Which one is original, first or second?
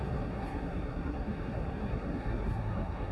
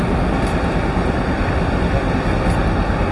second